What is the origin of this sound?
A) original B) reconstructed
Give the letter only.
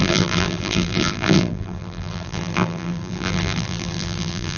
B